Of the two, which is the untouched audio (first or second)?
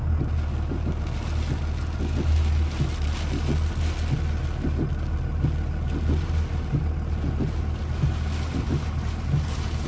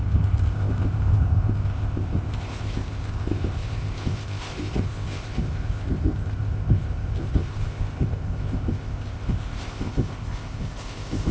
first